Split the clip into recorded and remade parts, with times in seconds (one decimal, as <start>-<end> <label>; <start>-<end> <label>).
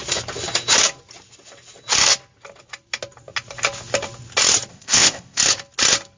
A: 0.0-4.7 recorded; 4.7-5.4 remade; 5.4-6.2 recorded